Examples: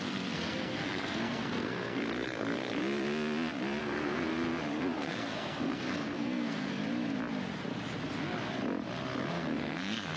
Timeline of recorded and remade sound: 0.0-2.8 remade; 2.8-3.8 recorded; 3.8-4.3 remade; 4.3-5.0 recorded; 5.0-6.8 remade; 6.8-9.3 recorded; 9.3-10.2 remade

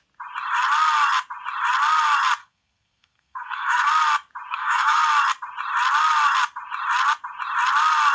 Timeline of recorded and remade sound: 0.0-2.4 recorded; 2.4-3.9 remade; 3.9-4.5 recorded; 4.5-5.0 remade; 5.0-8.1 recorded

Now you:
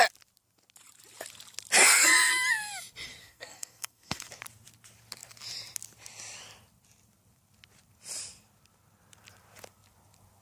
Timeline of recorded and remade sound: 0.0-1.8 recorded; 1.8-2.3 remade; 2.3-3.2 recorded; 3.2-4.3 remade; 4.3-10.4 recorded